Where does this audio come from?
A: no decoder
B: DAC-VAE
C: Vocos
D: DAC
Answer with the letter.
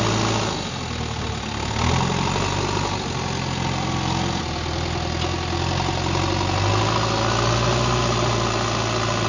A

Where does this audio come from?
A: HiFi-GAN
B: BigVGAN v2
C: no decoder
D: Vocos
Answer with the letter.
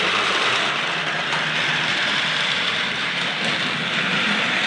B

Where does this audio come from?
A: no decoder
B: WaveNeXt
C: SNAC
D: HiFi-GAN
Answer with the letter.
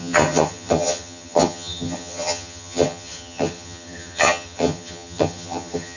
D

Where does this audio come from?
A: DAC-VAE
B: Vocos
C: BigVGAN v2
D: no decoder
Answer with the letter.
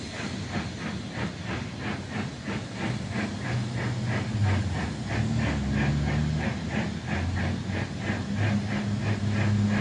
D